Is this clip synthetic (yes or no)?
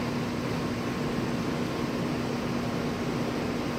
no